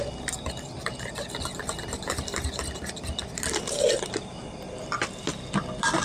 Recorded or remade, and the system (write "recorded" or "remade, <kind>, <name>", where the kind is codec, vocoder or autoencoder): recorded